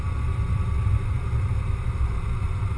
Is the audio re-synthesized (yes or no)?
no